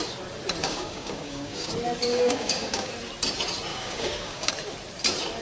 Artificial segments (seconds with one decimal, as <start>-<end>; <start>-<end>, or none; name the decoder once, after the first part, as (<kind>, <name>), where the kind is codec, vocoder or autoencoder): 0.6-1.7 (codec, DAC); 2.1-2.9; 3.7-4.5